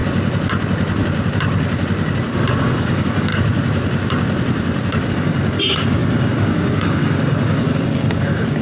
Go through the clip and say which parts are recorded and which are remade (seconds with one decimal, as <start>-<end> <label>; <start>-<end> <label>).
0.0-2.6 recorded; 2.6-3.3 remade; 3.3-5.1 recorded; 5.1-8.6 remade